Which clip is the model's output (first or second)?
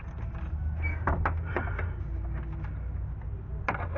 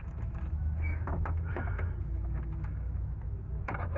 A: second